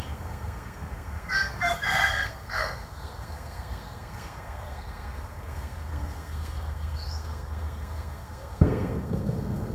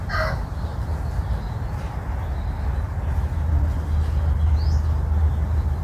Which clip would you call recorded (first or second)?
second